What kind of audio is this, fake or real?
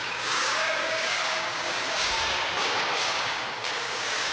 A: fake